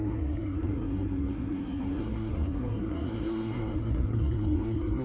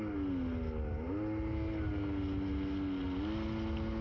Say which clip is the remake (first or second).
first